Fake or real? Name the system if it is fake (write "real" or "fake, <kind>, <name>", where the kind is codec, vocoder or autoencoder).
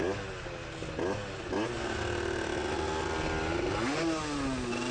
real